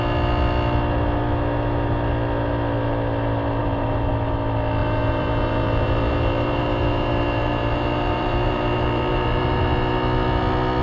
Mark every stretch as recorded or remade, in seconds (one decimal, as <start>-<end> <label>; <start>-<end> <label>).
0.0-3.6 recorded; 3.6-4.1 remade; 4.1-4.8 recorded; 4.8-9.6 remade; 9.6-10.8 recorded